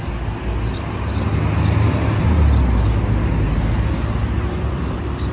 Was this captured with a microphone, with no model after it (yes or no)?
yes